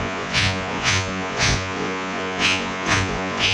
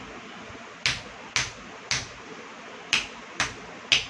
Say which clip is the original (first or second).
second